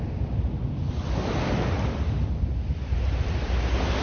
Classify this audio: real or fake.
real